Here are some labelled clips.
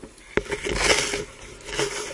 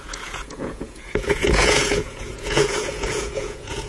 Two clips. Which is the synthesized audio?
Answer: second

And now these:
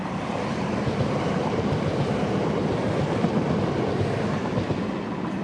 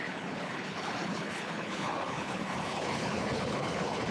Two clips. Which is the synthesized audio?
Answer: second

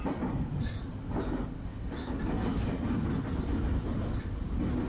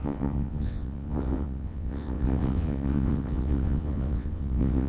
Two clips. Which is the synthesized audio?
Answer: second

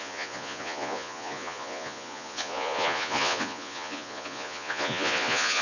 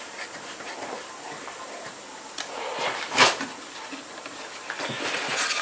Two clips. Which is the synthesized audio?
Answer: first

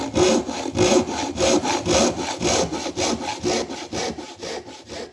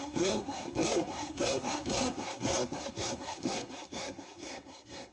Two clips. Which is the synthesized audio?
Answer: second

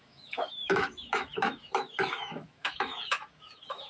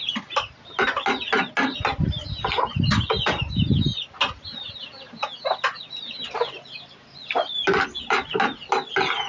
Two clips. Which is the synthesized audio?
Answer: first